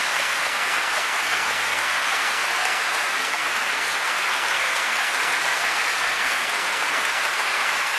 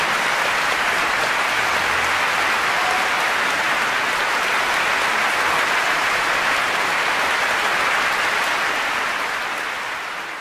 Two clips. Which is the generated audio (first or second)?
first